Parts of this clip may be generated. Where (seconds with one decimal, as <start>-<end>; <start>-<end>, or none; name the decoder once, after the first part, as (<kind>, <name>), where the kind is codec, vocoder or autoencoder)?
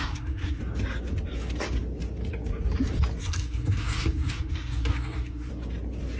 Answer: 0.0-0.6 (codec, SNAC); 3.2-5.5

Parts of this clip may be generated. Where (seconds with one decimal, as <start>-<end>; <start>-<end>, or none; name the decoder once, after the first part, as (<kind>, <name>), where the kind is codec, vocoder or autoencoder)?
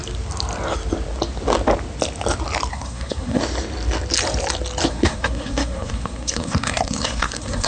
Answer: 2.7-3.4 (codec, SNAC); 4.9-7.7